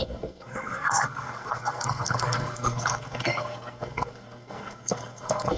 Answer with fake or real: fake